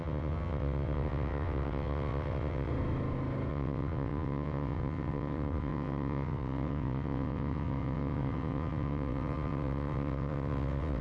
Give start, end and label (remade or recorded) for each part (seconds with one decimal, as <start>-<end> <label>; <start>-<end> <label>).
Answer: 0.0-2.7 remade; 2.7-3.5 recorded; 3.5-11.0 remade